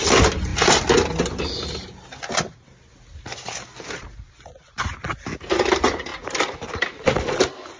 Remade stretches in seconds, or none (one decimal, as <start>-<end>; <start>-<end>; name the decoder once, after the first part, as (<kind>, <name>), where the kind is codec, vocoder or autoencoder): none